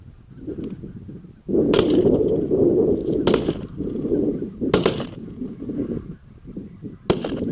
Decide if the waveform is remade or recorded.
recorded